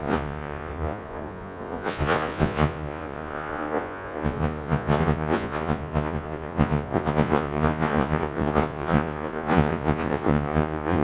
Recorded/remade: remade